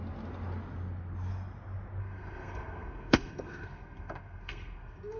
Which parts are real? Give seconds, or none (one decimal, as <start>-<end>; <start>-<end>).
0.0-2.0